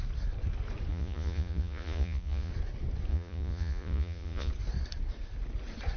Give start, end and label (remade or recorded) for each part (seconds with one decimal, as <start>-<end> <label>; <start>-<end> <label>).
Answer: 0.0-0.9 recorded; 0.9-2.5 remade; 2.5-3.1 recorded; 3.1-4.5 remade; 4.5-6.0 recorded